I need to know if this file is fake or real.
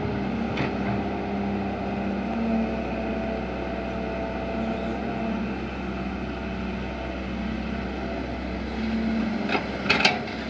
real